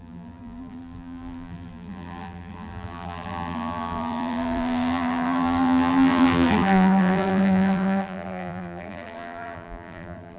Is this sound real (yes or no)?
no